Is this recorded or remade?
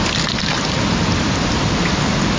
recorded